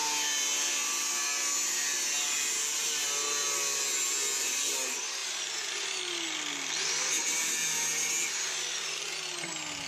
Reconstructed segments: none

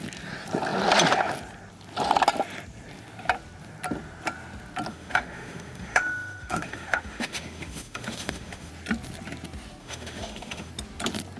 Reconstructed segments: 4.9-8.7 (autoencoder, DAC-VAE); 9.8-10.7